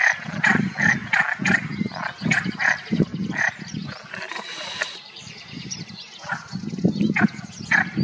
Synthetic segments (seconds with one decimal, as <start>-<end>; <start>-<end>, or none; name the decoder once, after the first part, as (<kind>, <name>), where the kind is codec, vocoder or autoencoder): none